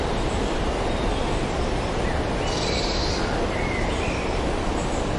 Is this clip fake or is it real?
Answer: real